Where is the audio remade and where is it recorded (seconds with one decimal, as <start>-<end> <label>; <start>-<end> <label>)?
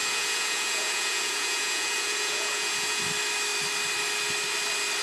0.0-3.0 remade; 3.0-5.0 recorded